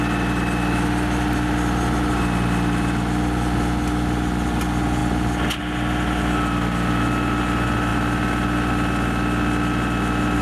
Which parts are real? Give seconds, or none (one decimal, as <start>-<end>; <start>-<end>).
0.0-10.4